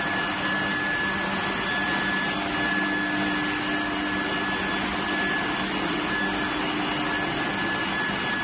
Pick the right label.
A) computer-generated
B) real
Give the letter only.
B